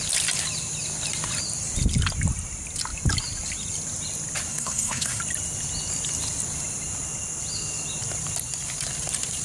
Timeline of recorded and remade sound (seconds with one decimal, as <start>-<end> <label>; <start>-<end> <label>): 0.0-4.5 recorded; 4.5-5.2 remade; 5.2-9.4 recorded